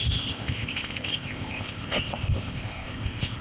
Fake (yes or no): yes